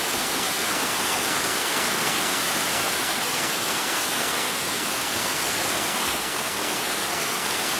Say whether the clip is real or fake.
fake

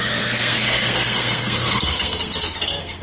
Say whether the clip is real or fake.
fake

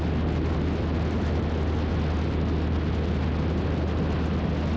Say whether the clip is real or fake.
real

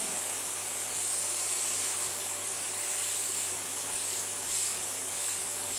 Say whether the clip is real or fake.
fake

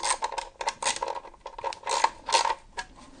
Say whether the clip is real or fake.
real